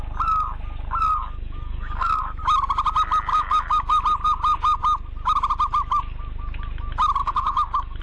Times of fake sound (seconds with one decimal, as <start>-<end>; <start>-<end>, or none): 1.1-2.4; 3.3-4.0; 7.2-8.0